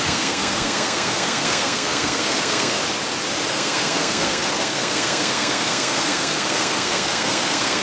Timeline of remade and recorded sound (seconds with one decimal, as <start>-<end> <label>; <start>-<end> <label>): 0.0-2.8 remade; 2.8-3.5 recorded; 3.5-7.8 remade